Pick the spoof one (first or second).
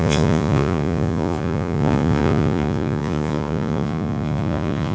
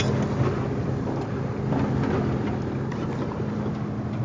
first